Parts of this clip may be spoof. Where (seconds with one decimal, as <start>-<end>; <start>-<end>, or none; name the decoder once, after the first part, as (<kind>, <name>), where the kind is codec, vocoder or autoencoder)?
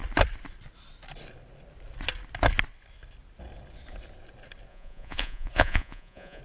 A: 4.7-6.4 (vocoder, Vocos)